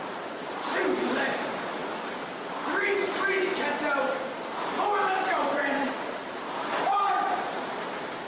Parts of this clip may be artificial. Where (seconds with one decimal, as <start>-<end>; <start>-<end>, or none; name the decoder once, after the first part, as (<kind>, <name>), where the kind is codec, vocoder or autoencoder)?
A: 0.0-1.8 (vocoder, BigVGAN v2); 4.0-8.3

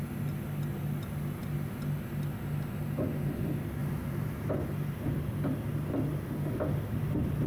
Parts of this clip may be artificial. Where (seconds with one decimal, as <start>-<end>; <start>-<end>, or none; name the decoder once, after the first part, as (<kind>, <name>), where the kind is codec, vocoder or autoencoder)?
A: 3.8-4.5 (vocoder, BigVGAN v2)